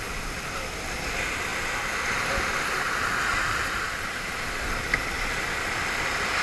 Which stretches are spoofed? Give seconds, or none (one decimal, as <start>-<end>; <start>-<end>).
none